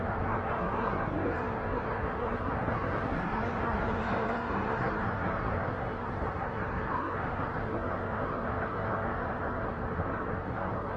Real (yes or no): no